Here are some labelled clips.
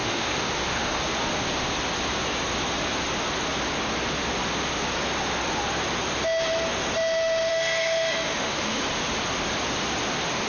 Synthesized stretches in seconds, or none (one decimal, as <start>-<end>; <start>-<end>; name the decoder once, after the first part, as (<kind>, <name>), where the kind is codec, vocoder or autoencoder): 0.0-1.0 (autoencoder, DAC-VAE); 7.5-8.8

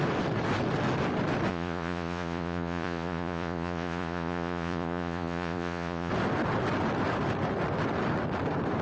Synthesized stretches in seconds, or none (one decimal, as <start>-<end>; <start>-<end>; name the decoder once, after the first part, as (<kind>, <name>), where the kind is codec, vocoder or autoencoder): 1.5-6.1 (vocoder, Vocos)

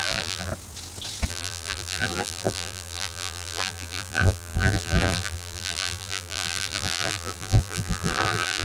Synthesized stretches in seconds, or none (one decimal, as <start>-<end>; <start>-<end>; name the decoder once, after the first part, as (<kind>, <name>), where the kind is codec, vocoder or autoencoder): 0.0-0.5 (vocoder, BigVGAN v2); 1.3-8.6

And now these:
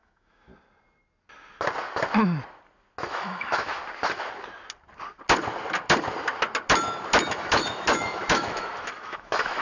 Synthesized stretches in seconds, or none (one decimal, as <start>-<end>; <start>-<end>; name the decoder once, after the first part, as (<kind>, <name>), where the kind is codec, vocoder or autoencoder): 0.0-0.5 (autoencoder, DAC-VAE); 3.0-3.8; 7.3-9.6

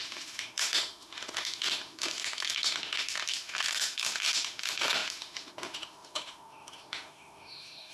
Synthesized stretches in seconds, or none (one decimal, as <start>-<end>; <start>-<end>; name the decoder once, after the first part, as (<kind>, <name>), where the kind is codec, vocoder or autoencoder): 0.0-7.9 (autoencoder, DAC-VAE)

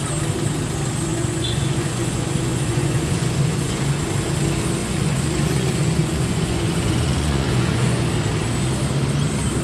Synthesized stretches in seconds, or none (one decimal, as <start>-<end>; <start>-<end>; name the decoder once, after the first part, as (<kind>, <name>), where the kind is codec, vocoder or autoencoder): 1.1-4.0 (vocoder, Vocos); 4.8-8.1